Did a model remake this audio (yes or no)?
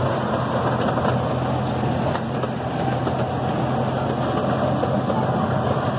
no